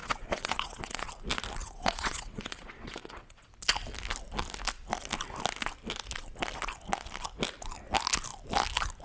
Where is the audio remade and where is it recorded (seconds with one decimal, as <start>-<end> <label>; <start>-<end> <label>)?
0.0-1.1 remade; 1.1-1.6 recorded; 1.6-3.5 remade; 3.5-9.0 recorded